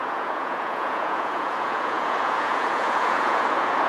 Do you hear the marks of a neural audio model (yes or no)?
yes